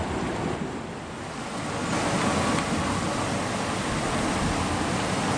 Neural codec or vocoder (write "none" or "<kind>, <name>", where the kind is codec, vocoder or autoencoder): none